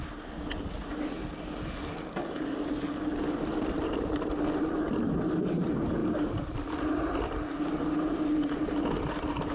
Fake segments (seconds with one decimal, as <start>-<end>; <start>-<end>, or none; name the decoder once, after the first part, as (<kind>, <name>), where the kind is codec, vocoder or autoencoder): 6.0-7.0 (vocoder, BigVGAN v2)